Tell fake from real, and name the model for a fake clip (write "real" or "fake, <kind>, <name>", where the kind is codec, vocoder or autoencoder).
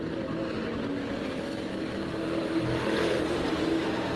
real